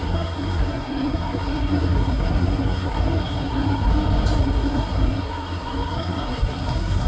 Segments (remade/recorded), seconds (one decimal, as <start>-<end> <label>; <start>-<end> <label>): 0.0-3.9 remade; 3.9-4.4 recorded; 4.4-7.1 remade